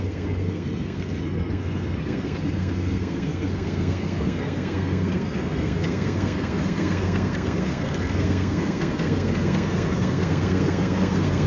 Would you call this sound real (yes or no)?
no